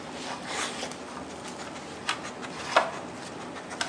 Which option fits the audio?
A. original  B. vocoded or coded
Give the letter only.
A